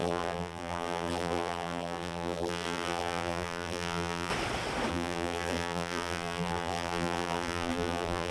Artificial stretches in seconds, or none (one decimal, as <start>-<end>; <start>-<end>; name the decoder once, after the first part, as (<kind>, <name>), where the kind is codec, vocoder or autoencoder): 0.0-4.3 (vocoder, BigVGAN v2); 4.9-8.3